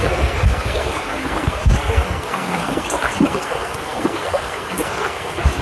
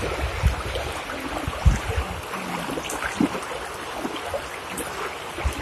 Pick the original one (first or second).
second